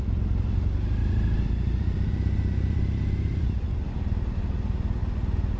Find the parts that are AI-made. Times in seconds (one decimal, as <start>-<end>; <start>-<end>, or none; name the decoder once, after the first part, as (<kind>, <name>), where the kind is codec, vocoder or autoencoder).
1.0-4.4 (vocoder, BigVGAN v2)

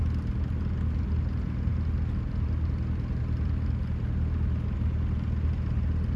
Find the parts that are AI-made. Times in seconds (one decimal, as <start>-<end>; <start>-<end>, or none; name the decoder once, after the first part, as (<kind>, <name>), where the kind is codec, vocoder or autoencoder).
none